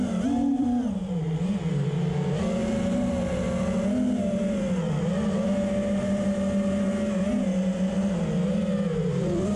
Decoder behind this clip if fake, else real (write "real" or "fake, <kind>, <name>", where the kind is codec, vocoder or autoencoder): real